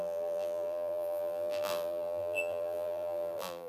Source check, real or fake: fake